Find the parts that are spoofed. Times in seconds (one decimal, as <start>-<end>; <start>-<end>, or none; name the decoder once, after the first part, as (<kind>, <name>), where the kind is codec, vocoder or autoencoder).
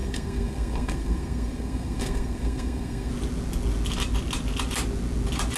0.0-3.1 (codec, SNAC)